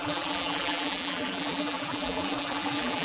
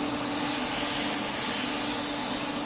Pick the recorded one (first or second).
second